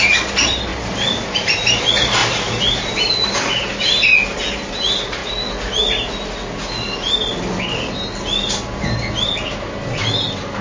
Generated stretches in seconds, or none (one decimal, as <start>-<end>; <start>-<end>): none